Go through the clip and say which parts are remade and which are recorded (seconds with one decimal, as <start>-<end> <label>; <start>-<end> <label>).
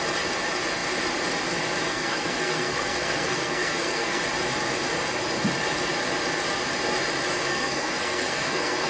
0.0-1.9 recorded; 1.9-4.2 remade; 4.2-7.5 recorded; 7.5-8.9 remade